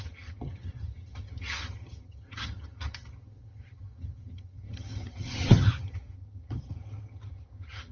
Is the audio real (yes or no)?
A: no